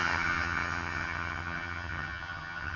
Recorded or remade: remade